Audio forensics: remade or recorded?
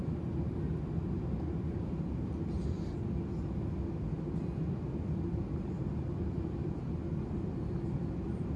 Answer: recorded